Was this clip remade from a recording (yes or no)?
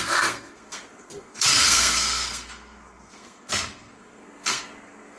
yes